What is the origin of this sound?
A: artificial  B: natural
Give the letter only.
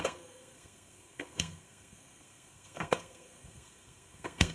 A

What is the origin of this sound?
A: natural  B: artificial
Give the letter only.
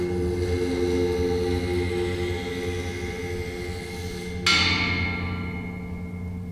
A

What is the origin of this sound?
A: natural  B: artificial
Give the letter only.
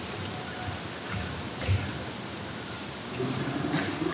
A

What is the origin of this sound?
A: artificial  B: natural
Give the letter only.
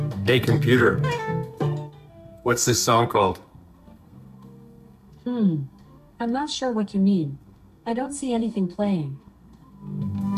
A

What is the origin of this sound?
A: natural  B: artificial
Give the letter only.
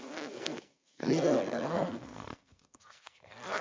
B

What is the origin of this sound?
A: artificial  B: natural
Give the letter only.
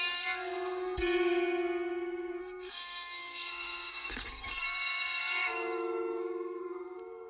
A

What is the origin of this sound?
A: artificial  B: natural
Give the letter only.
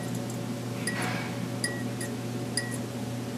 B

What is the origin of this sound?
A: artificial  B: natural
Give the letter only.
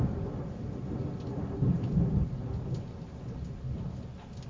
B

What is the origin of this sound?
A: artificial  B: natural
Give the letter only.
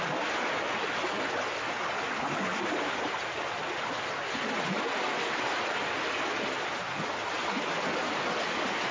B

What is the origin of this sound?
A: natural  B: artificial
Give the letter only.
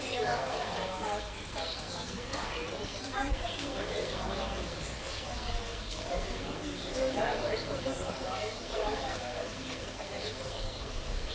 B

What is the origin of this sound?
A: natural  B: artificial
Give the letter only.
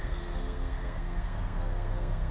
B